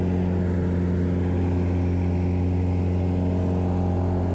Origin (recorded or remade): recorded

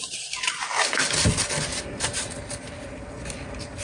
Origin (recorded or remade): recorded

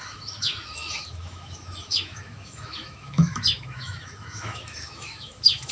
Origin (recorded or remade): remade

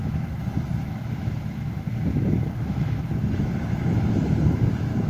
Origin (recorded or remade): remade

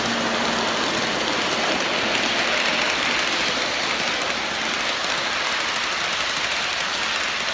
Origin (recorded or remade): recorded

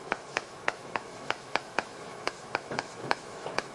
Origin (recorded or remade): remade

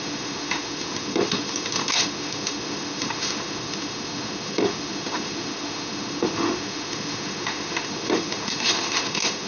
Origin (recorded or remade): remade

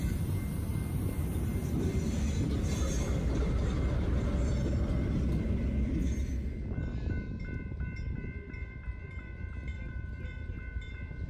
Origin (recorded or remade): recorded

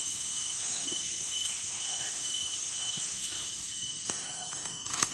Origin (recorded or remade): remade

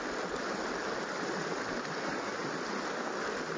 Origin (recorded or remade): recorded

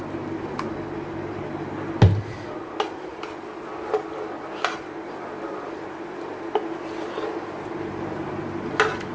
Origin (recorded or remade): recorded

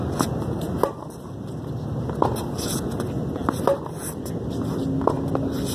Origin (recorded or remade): recorded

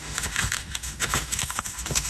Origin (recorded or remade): remade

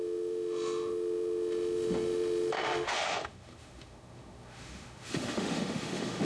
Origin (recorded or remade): remade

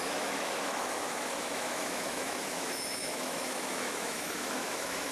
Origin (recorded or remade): remade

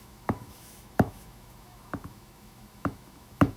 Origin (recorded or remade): remade